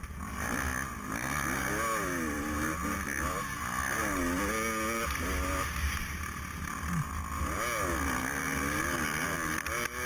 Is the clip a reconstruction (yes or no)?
no